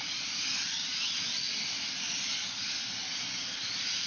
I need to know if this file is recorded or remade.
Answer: recorded